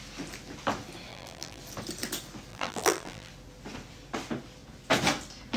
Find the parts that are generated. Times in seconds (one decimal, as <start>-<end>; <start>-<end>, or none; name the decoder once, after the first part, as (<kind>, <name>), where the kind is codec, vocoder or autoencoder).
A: 1.1-1.6 (vocoder, BigVGAN v2); 2.5-3.3